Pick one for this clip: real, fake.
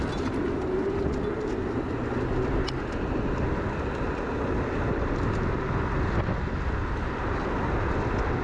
real